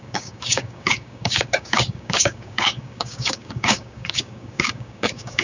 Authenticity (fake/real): fake